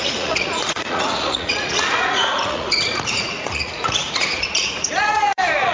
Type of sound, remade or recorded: remade